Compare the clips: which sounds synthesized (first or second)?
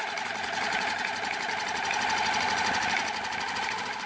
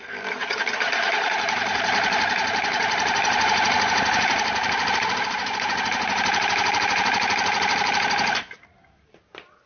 second